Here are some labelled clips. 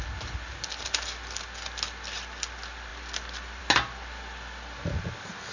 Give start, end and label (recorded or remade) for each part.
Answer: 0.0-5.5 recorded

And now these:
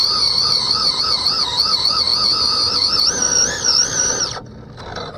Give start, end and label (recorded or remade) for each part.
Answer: 0.0-1.0 remade; 1.0-5.2 recorded